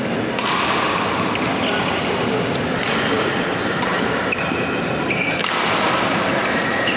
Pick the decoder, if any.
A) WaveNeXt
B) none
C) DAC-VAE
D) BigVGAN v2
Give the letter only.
B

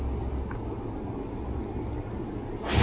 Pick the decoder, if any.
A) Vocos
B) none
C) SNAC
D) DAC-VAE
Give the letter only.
B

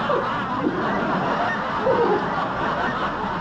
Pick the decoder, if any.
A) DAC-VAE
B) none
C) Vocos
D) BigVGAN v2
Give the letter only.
B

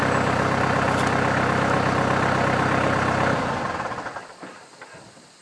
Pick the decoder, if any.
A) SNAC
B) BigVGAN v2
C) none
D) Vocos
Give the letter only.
C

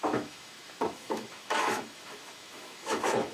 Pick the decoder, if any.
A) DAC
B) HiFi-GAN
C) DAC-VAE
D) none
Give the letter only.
C